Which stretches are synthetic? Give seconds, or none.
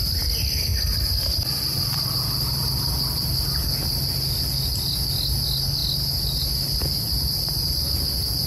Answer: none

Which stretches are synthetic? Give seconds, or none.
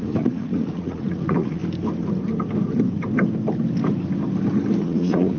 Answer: 0.0-1.6 (vocoder, Vocos); 4.8-5.4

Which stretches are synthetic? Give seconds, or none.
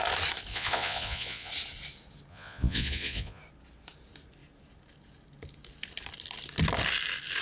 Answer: 0.5-1.5 (vocoder, Vocos); 2.3-3.4